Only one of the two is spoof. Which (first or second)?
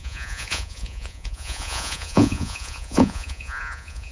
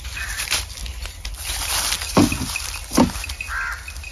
first